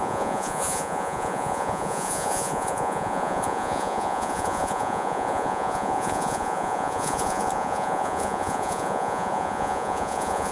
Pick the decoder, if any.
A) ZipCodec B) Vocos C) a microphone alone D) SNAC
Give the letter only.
B